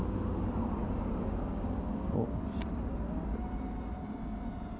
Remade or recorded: recorded